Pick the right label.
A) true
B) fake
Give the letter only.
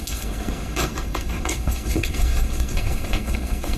B